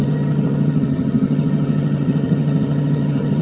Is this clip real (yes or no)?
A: no